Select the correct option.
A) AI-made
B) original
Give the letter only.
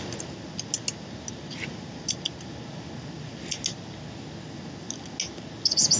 B